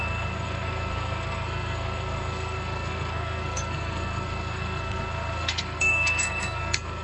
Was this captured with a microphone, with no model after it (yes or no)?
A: no